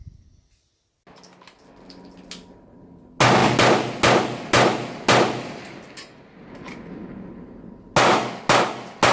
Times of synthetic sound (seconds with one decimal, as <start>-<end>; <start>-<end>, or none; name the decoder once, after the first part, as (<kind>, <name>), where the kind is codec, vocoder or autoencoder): none